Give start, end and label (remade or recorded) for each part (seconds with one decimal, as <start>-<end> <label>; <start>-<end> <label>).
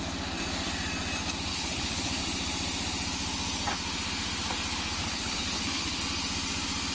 0.0-1.5 recorded; 1.5-2.2 remade; 2.2-5.0 recorded; 5.0-6.0 remade; 6.0-6.9 recorded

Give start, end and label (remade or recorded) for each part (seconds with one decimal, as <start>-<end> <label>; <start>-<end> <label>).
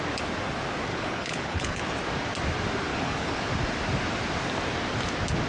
0.0-0.9 recorded; 0.9-1.8 remade; 1.8-2.9 recorded; 2.9-3.5 remade; 3.5-5.5 recorded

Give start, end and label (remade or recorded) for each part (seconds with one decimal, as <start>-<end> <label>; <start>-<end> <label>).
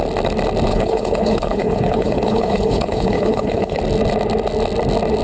0.0-0.7 recorded; 0.7-3.8 remade; 3.8-5.2 recorded